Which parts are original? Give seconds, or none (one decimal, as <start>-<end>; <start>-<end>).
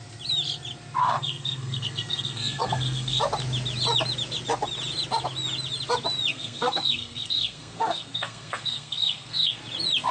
0.0-1.0; 3.2-6.3; 9.6-10.1